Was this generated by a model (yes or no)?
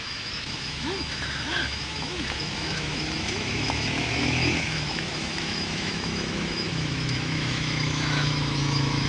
yes